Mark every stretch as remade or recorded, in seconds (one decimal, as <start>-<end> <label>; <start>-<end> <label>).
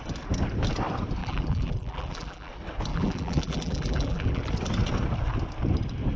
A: 0.0-1.2 recorded; 1.2-2.5 remade; 2.5-2.9 recorded; 2.9-4.5 remade; 4.5-6.2 recorded